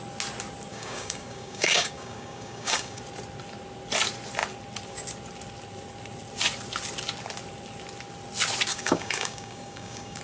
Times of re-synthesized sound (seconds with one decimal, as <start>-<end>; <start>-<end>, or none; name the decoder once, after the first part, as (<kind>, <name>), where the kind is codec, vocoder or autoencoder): 0.7-3.0 (codec, DAC); 8.7-10.2